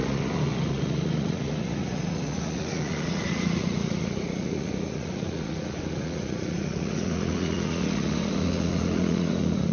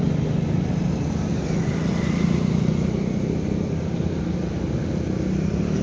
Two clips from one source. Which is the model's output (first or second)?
first